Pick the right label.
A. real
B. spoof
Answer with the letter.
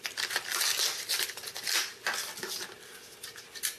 A